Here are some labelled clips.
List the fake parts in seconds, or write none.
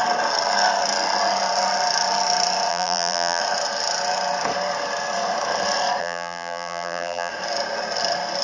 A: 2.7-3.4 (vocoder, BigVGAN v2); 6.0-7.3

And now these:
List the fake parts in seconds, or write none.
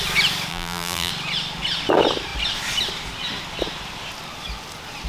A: 0.5-1.1 (vocoder, BigVGAN v2)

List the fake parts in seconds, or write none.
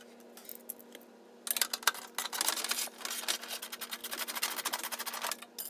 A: none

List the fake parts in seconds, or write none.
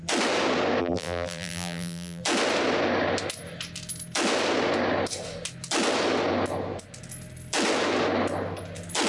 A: 0.8-2.2 (vocoder, BigVGAN v2)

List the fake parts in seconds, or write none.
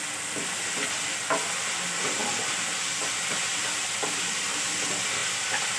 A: 3.5-4.8 (vocoder, BigVGAN v2); 5.2-5.8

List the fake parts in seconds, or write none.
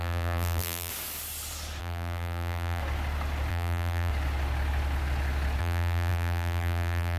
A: 0.0-0.9 (vocoder, BigVGAN v2); 1.8-2.8; 3.5-4.1; 5.6-7.2